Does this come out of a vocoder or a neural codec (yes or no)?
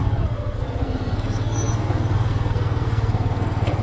yes